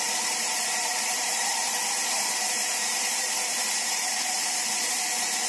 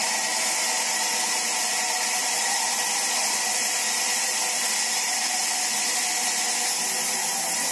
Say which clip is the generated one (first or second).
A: first